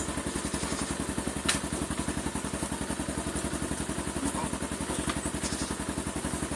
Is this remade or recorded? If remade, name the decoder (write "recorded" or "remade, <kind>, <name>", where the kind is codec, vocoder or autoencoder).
recorded